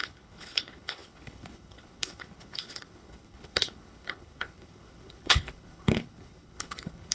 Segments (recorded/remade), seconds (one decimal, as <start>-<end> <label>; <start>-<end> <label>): 0.0-7.1 remade